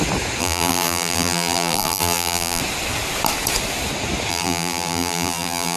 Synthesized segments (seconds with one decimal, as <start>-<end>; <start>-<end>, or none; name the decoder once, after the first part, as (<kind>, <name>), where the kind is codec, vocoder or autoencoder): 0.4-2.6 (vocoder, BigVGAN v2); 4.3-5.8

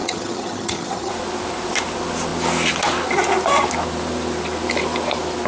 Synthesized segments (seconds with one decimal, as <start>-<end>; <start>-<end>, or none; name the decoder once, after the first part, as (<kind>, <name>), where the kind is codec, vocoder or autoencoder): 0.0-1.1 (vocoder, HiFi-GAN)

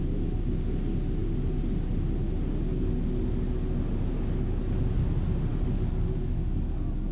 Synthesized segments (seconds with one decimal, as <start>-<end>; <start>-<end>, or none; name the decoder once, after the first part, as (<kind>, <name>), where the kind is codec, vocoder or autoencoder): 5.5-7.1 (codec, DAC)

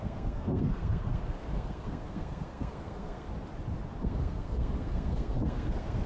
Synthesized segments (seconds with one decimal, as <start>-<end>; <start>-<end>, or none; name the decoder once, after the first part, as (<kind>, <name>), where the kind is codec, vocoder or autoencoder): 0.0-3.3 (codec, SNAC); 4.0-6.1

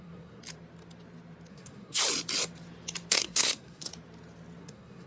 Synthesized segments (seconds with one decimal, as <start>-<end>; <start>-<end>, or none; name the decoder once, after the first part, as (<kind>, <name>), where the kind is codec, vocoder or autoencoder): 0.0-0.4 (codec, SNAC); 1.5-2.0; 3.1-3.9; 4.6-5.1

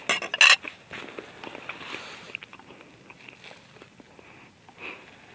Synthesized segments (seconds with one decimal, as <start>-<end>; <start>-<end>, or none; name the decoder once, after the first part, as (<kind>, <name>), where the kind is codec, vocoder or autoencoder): none

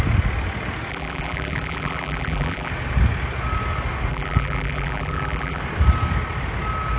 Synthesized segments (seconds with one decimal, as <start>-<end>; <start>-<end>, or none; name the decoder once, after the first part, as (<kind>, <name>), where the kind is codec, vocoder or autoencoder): 0.9-2.7 (vocoder, BigVGAN v2); 4.1-5.6